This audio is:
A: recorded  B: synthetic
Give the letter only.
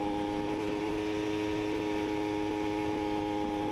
A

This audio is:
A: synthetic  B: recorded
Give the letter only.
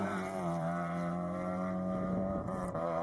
A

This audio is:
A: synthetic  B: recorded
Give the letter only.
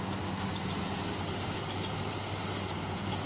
B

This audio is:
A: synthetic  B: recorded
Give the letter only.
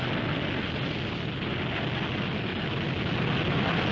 B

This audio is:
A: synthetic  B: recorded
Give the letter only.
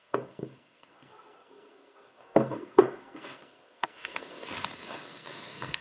A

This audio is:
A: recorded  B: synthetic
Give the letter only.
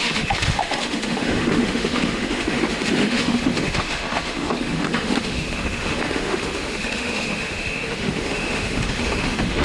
B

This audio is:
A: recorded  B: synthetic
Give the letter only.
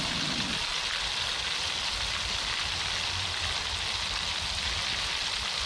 A